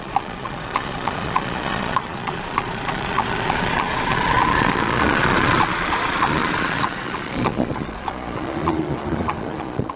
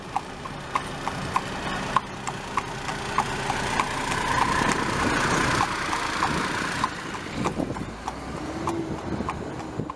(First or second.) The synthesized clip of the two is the first